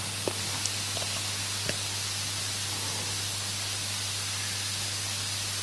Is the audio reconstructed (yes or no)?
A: no